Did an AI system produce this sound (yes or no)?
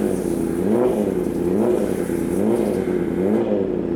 no